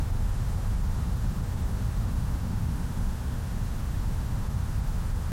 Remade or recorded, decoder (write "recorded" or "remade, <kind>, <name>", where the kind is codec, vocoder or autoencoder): remade, autoencoder, DAC-VAE